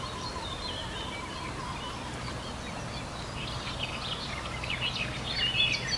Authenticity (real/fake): real